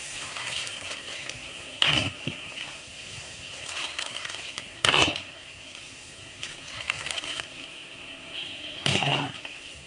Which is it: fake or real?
fake